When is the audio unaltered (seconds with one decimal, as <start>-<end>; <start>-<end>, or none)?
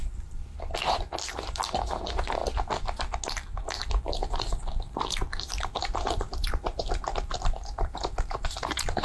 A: 0.0-0.9; 2.4-5.1